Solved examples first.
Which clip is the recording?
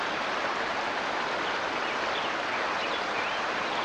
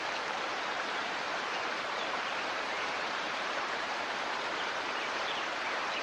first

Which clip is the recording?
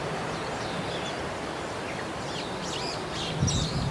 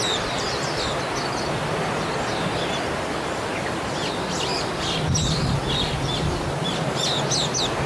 second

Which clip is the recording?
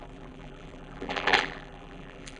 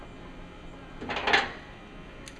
second